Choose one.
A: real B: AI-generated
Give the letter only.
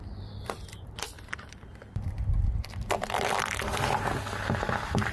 B